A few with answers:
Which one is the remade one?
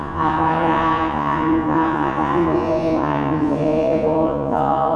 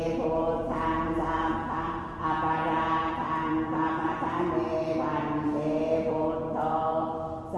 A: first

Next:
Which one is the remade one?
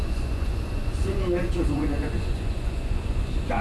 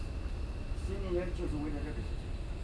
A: first